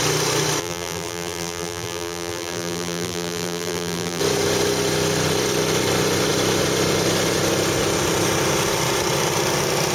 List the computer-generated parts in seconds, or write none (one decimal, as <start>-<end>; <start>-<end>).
0.6-4.2